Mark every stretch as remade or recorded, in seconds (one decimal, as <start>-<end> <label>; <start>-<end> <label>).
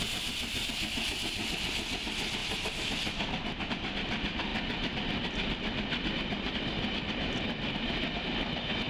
0.0-8.9 recorded